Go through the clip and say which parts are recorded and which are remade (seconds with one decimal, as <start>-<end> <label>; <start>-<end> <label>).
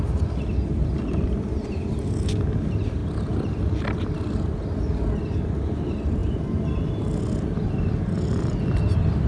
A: 0.0-9.3 recorded